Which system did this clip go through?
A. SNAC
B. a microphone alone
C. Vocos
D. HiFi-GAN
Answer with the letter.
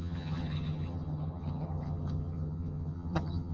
D